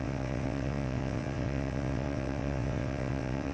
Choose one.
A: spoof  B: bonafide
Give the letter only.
A